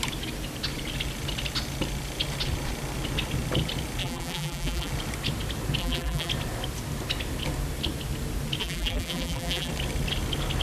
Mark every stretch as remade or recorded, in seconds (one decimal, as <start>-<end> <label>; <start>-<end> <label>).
0.0-4.0 recorded; 4.0-4.9 remade; 4.9-5.8 recorded; 5.8-6.3 remade; 6.3-8.6 recorded; 8.6-9.7 remade; 9.7-10.6 recorded